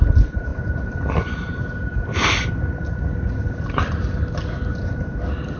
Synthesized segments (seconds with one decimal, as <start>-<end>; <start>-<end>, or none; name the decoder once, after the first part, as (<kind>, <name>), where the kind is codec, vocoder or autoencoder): none